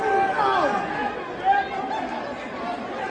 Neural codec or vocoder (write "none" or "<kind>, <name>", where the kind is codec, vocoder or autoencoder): none